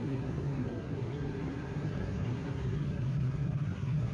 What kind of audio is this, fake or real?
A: fake